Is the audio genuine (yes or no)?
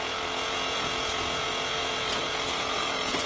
no